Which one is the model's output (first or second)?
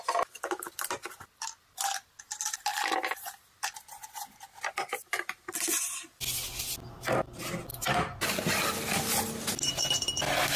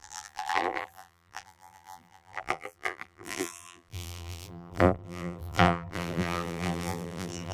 second